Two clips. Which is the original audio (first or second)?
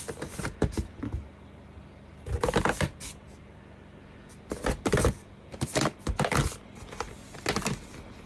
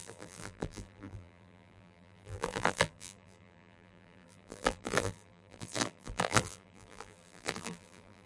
first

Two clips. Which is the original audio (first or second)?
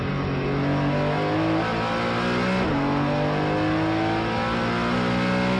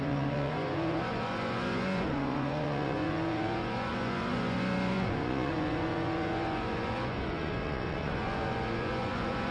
first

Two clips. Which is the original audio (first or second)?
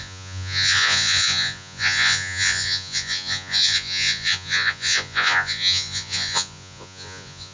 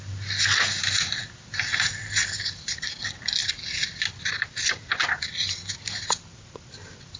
second